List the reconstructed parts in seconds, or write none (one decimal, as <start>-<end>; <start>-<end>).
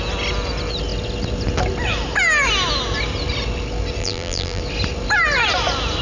4.0-4.6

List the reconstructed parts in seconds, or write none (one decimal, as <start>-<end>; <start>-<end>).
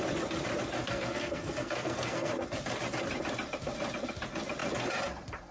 0.8-2.3